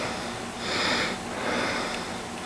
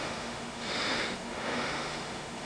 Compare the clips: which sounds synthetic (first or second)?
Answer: second